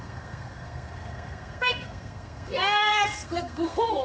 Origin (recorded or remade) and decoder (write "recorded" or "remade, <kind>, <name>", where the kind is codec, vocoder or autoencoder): remade, codec, SNAC